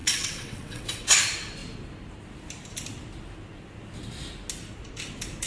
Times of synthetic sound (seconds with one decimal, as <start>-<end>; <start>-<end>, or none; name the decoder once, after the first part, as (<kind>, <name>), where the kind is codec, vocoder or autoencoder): 0.0-1.2 (vocoder, WaveNeXt)